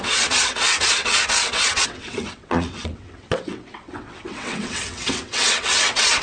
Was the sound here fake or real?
fake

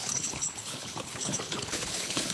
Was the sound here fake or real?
fake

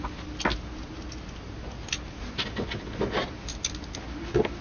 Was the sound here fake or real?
real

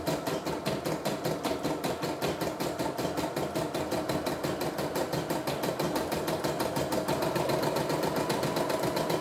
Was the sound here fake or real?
real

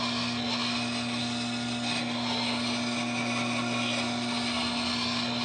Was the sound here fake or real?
real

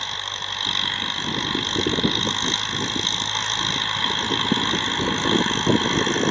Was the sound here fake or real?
real